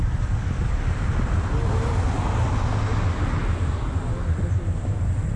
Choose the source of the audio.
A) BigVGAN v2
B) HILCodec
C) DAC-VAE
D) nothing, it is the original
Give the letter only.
D